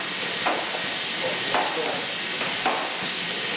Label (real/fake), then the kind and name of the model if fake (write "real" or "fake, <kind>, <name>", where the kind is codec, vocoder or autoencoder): real